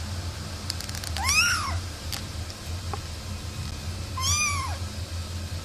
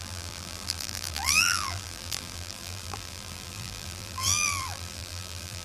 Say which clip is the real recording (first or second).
first